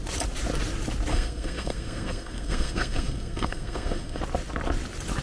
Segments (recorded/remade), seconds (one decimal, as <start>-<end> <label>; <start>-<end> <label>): 0.0-1.1 recorded; 1.1-4.2 remade; 4.2-5.2 recorded

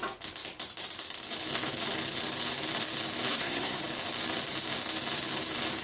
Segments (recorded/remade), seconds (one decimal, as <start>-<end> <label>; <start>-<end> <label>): 0.0-3.3 recorded; 3.3-3.8 remade; 3.8-5.8 recorded

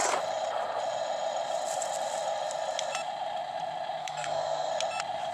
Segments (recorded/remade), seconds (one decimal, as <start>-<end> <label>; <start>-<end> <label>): 0.0-4.0 recorded; 4.0-4.7 remade; 4.7-5.3 recorded

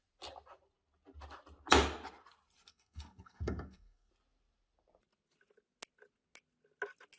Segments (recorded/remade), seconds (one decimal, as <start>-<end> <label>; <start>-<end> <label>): 0.0-2.7 recorded; 2.7-4.1 remade; 4.1-7.2 recorded

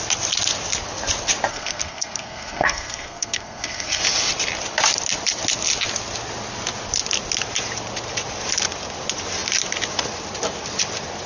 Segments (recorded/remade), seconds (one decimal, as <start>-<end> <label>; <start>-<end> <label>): 0.0-1.5 recorded; 1.5-4.0 remade; 4.0-11.3 recorded

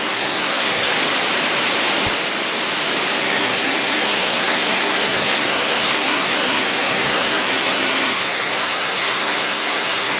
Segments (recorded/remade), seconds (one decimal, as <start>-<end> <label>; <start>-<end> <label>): 0.0-0.9 remade; 0.9-3.2 recorded; 3.2-10.2 remade

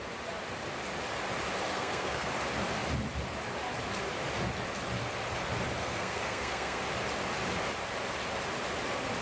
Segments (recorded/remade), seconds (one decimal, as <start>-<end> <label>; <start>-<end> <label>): 0.0-1.7 recorded; 1.7-2.3 remade; 2.3-5.8 recorded; 5.8-6.8 remade; 6.8-9.2 recorded

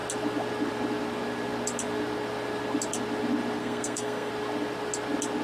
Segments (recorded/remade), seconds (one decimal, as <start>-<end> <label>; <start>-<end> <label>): 0.0-3.6 recorded; 3.6-4.3 remade; 4.3-5.4 recorded